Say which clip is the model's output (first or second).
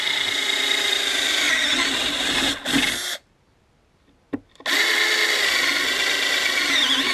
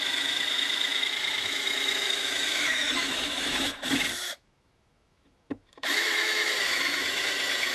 second